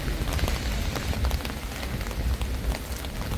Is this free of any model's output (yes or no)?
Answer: yes